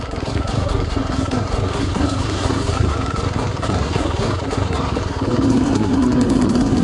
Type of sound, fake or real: fake